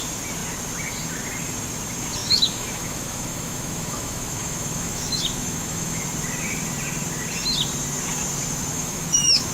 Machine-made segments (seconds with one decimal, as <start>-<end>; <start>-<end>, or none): 2.2-6.0; 8.7-9.5